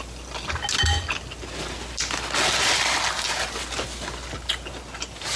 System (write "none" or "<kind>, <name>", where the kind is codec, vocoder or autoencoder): none